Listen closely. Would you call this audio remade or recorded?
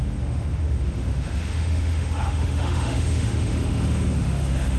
remade